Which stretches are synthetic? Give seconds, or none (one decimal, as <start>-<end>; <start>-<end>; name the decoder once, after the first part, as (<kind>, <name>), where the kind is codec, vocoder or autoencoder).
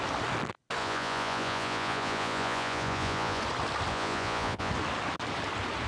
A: 0.8-3.4 (vocoder, Vocos); 3.9-4.7